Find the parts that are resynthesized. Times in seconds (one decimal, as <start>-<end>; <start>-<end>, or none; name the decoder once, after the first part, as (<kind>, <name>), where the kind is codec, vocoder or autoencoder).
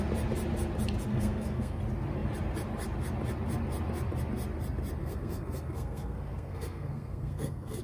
1.1-1.8 (codec, SNAC); 5.0-7.8